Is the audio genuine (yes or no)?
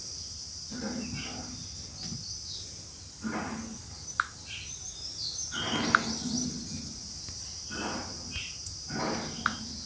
yes